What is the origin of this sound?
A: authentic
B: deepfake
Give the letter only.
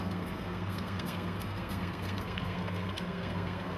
B